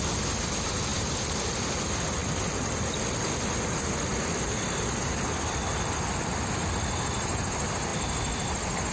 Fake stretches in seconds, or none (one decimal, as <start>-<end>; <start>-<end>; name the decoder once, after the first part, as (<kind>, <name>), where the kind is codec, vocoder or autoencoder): none